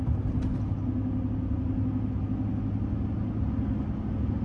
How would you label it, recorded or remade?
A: recorded